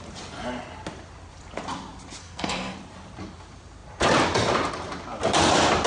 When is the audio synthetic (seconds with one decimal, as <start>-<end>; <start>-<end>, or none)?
2.2-2.8